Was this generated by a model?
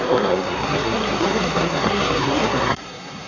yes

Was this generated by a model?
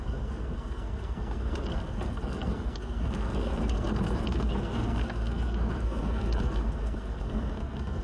yes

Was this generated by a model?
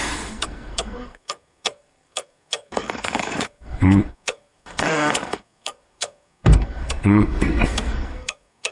yes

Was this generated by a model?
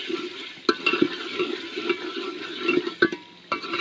no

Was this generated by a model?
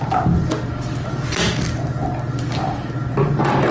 no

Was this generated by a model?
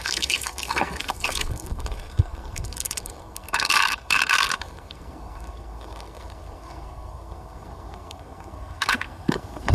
yes